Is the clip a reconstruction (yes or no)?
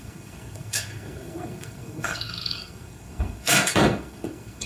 yes